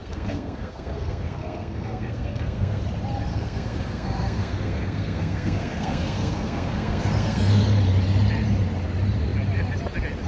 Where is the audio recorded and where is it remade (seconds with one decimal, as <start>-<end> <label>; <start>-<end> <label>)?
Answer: 0.0-2.8 remade; 2.8-3.3 recorded; 3.3-7.6 remade; 7.6-10.3 recorded

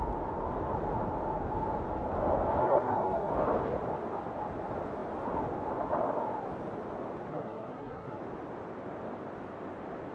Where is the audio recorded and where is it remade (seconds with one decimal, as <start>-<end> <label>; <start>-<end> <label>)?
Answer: 0.0-2.6 recorded; 2.6-3.3 remade; 3.3-7.3 recorded; 7.3-8.2 remade; 8.2-10.1 recorded

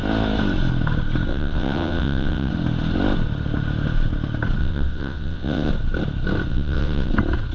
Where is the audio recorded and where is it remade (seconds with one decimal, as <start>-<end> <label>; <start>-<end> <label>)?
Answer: 0.0-1.3 recorded; 1.3-2.5 remade; 2.5-4.6 recorded; 4.6-5.7 remade; 5.7-6.5 recorded; 6.5-7.1 remade; 7.1-7.5 recorded

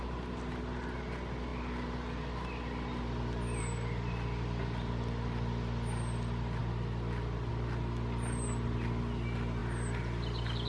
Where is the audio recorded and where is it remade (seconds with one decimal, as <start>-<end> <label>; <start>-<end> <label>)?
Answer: 0.0-10.7 recorded

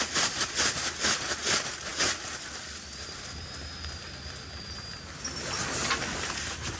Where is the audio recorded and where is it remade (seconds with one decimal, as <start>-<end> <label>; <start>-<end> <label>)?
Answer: 0.0-6.8 recorded

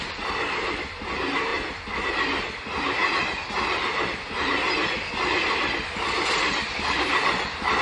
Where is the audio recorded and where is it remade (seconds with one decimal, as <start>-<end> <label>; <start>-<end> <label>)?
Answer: 0.0-7.8 recorded

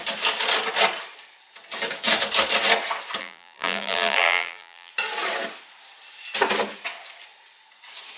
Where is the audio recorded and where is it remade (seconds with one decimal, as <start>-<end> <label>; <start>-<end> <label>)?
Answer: 0.0-3.2 recorded; 3.2-4.9 remade; 4.9-8.2 recorded

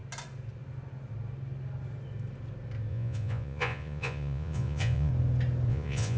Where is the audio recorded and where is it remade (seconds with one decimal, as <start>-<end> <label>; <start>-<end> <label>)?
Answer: 0.0-2.9 recorded; 2.9-5.1 remade; 5.1-5.7 recorded; 5.7-6.2 remade